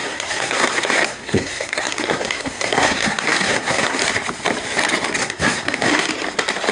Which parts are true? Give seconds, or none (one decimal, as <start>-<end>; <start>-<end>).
4.0-5.2; 6.1-6.7